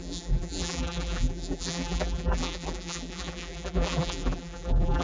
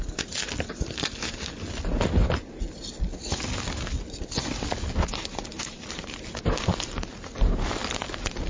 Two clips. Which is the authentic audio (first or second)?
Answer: second